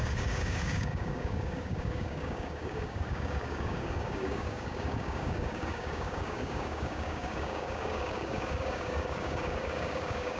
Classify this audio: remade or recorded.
remade